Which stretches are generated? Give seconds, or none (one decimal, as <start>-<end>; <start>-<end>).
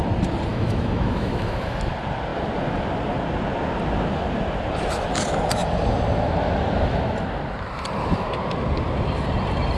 0.5-1.8